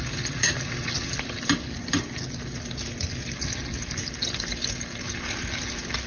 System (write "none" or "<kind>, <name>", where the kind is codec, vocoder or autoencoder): none